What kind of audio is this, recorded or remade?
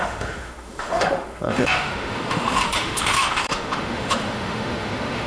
remade